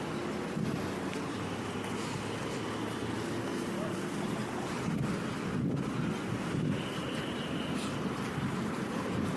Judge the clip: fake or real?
real